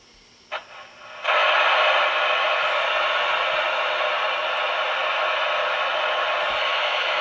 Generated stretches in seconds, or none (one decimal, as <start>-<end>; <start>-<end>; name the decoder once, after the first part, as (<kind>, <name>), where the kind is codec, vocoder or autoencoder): 6.7-7.2 (autoencoder, DAC-VAE)